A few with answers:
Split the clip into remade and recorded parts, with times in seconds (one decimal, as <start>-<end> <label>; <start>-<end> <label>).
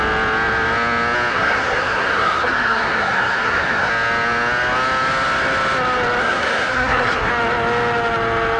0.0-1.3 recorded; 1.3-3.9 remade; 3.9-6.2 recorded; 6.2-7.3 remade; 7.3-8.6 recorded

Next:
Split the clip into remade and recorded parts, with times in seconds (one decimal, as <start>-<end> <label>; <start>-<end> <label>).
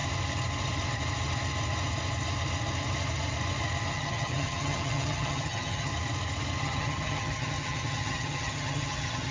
0.0-3.9 recorded; 3.9-5.9 remade; 5.9-6.6 recorded; 6.6-9.3 remade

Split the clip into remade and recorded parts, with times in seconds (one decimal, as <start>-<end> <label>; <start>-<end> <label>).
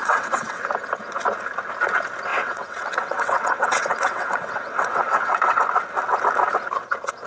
0.0-0.6 remade; 0.6-2.3 recorded; 2.3-5.6 remade; 5.6-7.3 recorded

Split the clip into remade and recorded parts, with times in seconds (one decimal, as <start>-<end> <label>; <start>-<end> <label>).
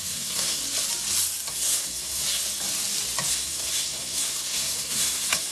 0.0-0.6 remade; 0.6-1.5 recorded; 1.5-2.2 remade; 2.2-3.3 recorded; 3.3-5.5 remade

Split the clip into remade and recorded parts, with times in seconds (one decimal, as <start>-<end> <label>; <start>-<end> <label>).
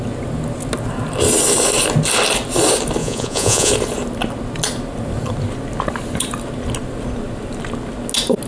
0.0-3.0 recorded; 3.0-3.7 remade; 3.7-8.5 recorded